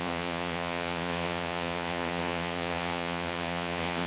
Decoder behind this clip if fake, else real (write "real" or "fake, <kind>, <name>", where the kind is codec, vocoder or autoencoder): fake, vocoder, Vocos